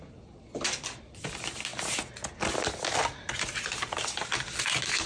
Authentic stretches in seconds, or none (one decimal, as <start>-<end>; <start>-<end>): 0.0-5.1